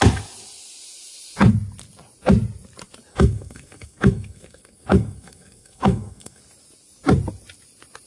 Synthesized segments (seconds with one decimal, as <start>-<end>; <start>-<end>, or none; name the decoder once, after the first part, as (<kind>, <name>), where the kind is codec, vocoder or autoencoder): 3.1-6.4 (codec, SNAC)